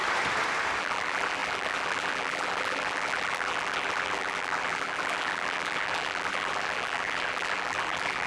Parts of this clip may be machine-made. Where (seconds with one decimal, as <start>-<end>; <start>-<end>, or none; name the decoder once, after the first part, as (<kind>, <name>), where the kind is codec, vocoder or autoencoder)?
0.8-8.3 (vocoder, BigVGAN v2)